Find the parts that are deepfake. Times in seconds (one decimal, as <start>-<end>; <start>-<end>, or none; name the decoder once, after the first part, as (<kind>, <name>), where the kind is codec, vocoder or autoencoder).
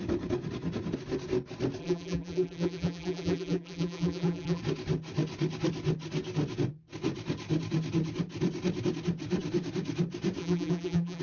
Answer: 1.8-4.6 (vocoder, BigVGAN v2); 10.4-11.2